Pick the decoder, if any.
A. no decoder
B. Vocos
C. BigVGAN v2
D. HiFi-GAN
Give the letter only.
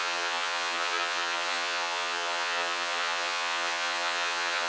D